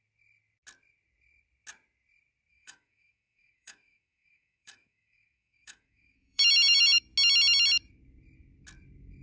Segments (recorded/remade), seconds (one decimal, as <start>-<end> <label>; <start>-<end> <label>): 0.0-2.5 recorded; 2.5-7.0 remade; 7.0-9.2 recorded